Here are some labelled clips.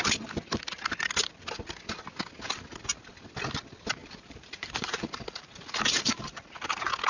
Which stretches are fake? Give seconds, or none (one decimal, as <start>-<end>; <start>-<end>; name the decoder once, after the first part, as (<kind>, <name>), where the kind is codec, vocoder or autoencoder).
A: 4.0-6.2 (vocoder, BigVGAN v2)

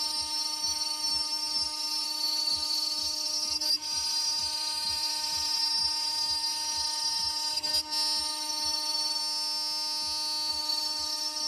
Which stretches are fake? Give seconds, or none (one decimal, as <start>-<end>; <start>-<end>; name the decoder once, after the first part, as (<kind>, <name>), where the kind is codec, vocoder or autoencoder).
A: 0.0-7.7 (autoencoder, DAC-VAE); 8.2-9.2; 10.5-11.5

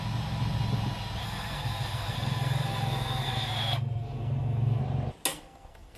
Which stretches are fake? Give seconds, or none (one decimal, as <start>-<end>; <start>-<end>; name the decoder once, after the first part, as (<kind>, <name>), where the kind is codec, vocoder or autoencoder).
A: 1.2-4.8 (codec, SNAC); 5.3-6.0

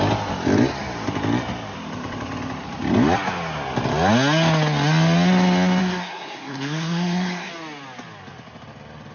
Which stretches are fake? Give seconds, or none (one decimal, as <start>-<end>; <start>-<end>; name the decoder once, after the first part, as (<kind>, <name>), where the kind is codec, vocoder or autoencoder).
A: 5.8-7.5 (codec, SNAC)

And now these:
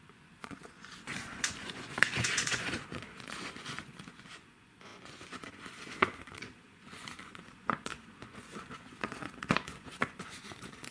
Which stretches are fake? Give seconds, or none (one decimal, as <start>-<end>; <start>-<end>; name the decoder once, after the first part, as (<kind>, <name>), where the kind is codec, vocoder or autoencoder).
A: 0.0-10.9 (vocoder, Vocos)

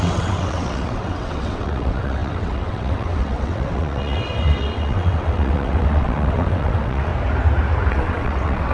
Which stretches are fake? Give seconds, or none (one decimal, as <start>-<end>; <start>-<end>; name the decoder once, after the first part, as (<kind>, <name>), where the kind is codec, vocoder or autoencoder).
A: 0.0-7.1 (vocoder, WaveNeXt); 7.9-8.7